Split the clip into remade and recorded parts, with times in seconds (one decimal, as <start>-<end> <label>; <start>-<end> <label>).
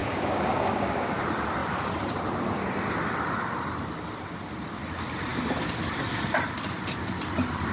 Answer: 0.0-1.2 remade; 1.2-7.7 recorded